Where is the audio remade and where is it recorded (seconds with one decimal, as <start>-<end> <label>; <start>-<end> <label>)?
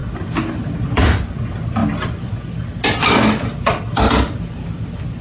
0.0-5.2 recorded